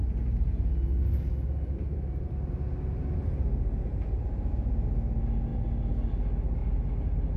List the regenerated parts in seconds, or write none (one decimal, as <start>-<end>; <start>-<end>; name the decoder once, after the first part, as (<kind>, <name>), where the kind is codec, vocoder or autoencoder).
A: 1.5-2.2 (vocoder, BigVGAN v2); 3.9-4.7